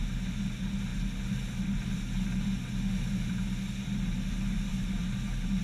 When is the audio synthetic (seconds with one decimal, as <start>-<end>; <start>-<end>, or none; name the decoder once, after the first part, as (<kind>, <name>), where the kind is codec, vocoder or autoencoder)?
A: 4.7-5.6 (vocoder, BigVGAN v2)